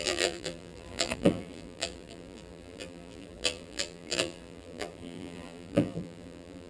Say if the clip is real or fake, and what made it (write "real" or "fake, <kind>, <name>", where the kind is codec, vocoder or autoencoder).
fake, vocoder, BigVGAN v2